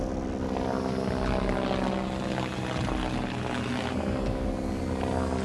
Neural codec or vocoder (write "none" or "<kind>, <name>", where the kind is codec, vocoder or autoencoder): none